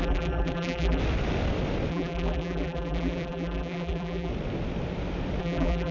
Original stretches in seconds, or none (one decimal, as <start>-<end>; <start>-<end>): 1.0-1.9; 4.3-5.4